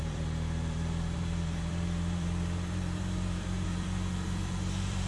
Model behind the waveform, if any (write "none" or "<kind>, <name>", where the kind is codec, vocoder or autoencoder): vocoder, BigVGAN v2